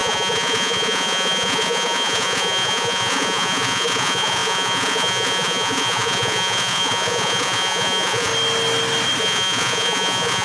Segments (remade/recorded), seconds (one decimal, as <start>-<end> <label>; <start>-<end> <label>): 0.0-8.3 remade; 8.3-9.2 recorded; 9.2-10.4 remade